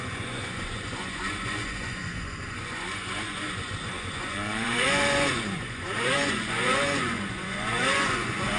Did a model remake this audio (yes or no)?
yes